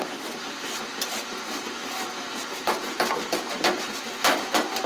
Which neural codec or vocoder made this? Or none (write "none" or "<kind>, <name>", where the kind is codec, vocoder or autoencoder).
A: none